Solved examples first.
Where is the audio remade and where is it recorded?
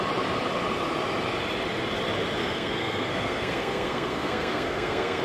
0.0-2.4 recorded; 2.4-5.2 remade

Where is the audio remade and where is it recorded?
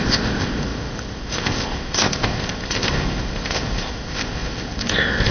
0.0-5.3 remade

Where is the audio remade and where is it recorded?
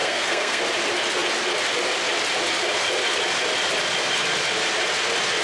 0.0-0.6 remade; 0.6-5.4 recorded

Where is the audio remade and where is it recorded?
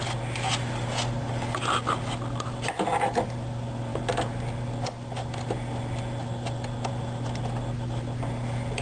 0.0-8.8 recorded